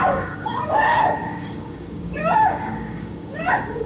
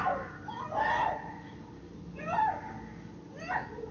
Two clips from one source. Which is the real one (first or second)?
second